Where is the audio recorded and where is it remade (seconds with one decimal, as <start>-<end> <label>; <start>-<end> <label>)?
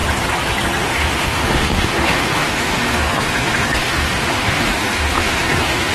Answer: 0.0-0.8 recorded; 0.8-5.9 remade